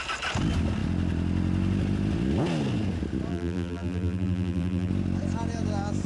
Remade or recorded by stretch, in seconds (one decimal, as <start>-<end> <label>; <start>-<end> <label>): 0.0-3.3 recorded; 3.3-4.9 remade; 4.9-6.1 recorded